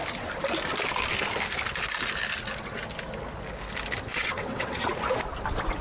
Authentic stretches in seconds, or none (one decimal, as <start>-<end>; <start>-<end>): 0.0-4.1; 4.8-5.8